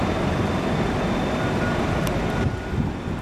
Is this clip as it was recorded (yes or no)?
yes